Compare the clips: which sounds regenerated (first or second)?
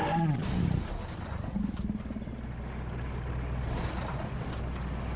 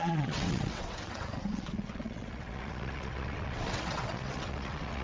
second